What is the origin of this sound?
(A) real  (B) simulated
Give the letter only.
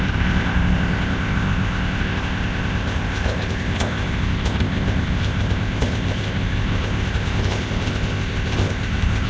B